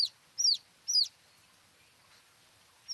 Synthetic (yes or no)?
no